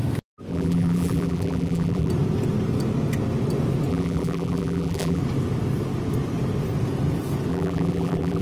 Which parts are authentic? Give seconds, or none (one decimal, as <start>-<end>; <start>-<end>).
0.0-0.5; 2.1-3.9; 5.2-7.5